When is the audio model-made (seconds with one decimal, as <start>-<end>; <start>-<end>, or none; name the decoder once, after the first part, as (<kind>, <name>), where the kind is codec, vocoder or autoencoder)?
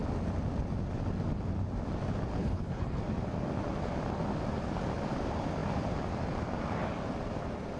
2.4-3.0 (codec, HILCodec)